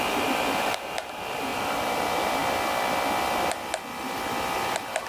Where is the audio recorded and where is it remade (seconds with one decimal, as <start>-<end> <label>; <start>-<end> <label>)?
0.0-2.4 remade; 2.4-5.1 recorded